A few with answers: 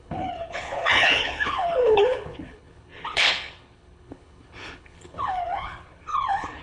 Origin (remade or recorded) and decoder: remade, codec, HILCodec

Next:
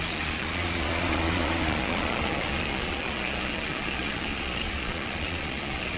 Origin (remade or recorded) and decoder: remade, vocoder, Vocos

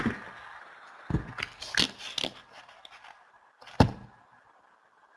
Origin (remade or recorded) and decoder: recorded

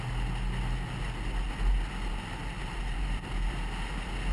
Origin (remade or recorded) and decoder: recorded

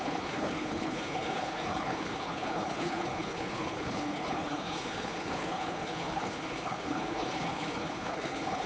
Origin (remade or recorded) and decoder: remade, codec, HILCodec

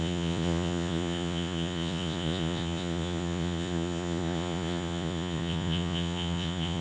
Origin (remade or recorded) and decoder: remade, vocoder, Vocos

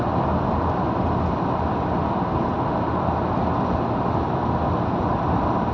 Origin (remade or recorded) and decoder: recorded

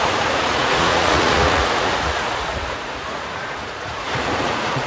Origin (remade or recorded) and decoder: remade, vocoder, Vocos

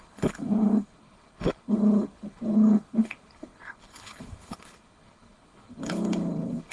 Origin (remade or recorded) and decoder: remade, codec, HILCodec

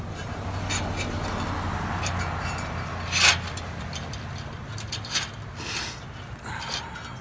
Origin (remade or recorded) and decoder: recorded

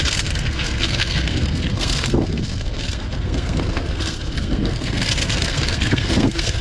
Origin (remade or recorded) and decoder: remade, codec, SNAC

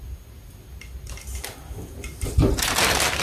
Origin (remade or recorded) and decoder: recorded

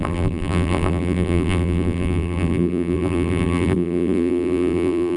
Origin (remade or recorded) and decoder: remade, vocoder, BigVGAN v2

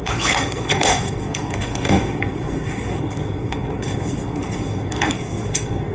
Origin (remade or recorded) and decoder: remade, codec, SNAC